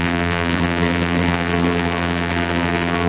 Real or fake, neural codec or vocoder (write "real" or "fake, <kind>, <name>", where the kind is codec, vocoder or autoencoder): fake, vocoder, BigVGAN v2